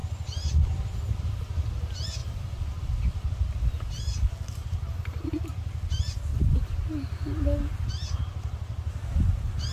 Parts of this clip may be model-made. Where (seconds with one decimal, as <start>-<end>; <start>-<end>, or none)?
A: 2.2-2.8